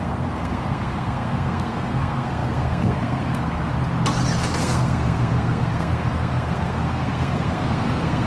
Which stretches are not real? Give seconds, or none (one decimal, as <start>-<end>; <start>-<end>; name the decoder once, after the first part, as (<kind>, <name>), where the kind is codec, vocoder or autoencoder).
0.0-3.7 (codec, SNAC); 4.6-8.3